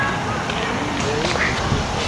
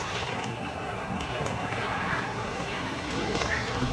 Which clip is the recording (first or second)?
first